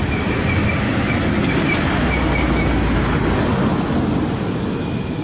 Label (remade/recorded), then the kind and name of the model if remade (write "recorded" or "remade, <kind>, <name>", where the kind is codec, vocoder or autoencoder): recorded